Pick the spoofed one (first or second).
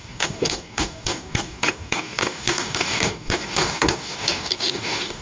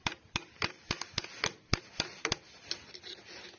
first